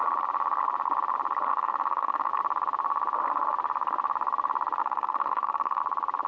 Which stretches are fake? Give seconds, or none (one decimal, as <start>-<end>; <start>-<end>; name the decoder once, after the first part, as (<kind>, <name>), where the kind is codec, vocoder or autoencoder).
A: 1.5-2.3 (autoencoder, DAC-VAE); 4.8-5.8